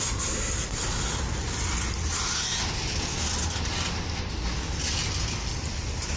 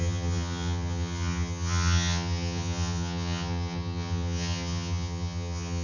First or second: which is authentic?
first